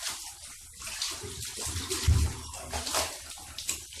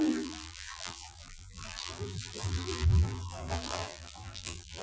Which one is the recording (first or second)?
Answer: first